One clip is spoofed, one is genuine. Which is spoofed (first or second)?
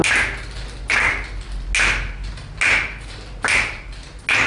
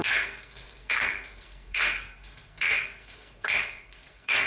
second